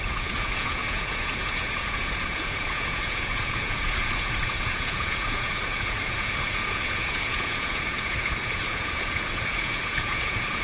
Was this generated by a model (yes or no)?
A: yes